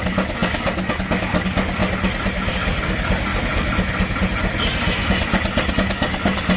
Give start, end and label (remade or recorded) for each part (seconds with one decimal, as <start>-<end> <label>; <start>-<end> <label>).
0.0-1.8 remade; 1.8-2.5 recorded; 2.5-3.3 remade; 3.3-5.7 recorded; 5.7-6.6 remade